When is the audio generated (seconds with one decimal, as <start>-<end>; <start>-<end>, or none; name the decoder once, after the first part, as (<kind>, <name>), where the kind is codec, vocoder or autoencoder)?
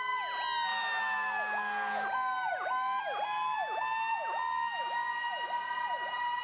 none